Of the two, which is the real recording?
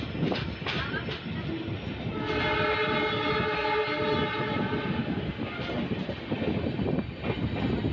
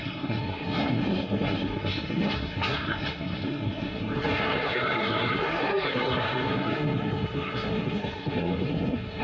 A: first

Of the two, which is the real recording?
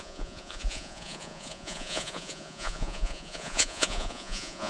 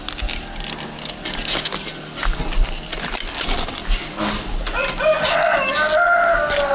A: second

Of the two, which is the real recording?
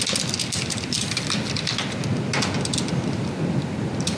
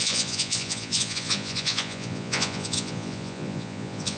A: first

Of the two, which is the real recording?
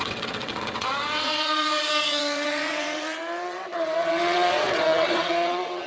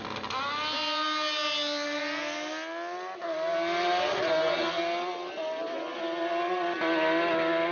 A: second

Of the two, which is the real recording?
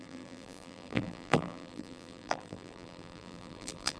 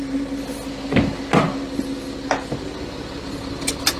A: second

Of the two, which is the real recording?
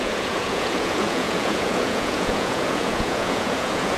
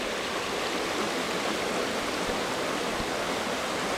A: second